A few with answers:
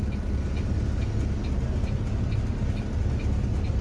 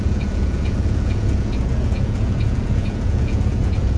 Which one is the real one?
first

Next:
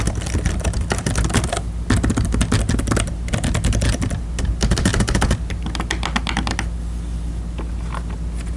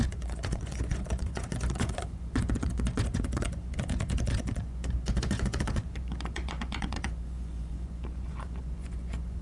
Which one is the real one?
first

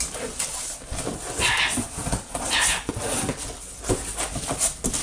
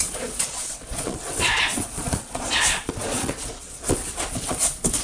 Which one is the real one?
first